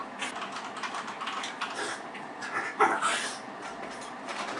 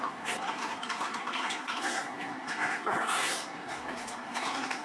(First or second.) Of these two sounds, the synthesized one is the second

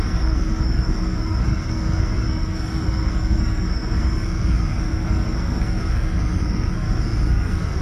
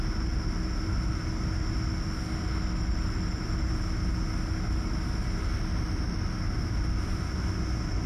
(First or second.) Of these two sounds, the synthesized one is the first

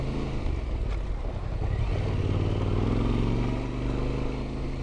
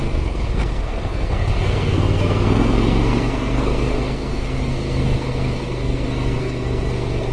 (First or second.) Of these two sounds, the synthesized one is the second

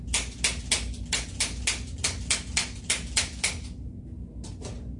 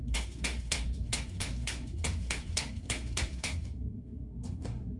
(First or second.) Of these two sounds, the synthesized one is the second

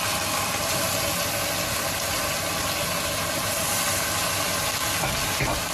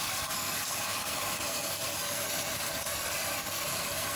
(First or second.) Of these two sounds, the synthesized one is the second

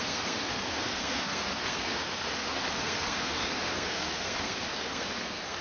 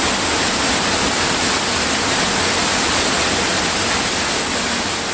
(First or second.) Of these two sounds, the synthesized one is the first